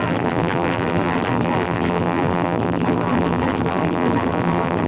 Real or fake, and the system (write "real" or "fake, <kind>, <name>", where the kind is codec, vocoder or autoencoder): fake, vocoder, BigVGAN v2